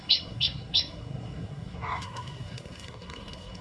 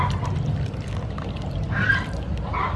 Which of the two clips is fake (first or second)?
first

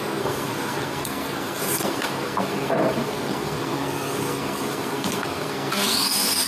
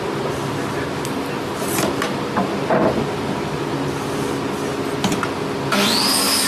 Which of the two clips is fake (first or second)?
first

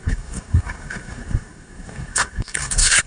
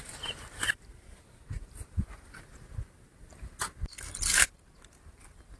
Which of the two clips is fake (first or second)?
first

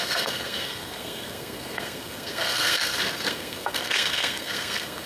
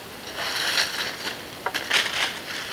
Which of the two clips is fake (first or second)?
first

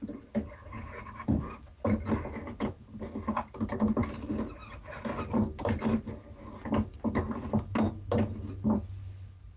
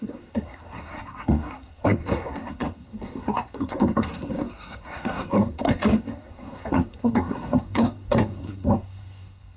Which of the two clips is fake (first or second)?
second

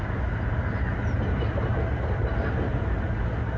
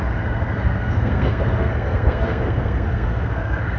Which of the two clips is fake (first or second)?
second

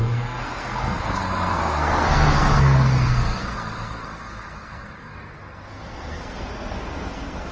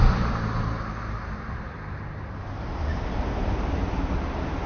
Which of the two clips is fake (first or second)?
first